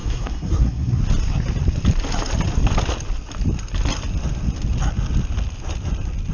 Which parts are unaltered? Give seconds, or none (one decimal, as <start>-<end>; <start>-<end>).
1.0-6.3